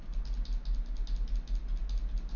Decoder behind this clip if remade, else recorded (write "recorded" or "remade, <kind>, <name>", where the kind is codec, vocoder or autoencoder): recorded